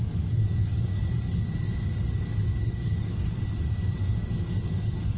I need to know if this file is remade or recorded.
remade